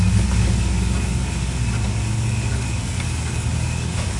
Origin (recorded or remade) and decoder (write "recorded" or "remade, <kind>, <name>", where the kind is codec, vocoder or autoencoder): remade, codec, DAC